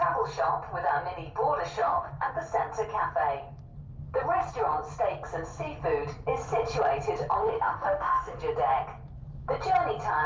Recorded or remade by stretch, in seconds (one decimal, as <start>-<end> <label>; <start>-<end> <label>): 0.0-1.8 recorded; 1.8-2.3 remade; 2.3-7.4 recorded; 7.4-8.4 remade; 8.4-10.3 recorded